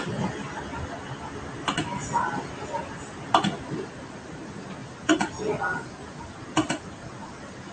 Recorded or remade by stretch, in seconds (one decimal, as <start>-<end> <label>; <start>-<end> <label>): 0.0-7.7 recorded